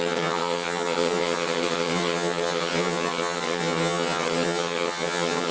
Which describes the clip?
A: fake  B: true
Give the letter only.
A